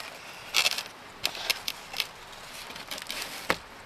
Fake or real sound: real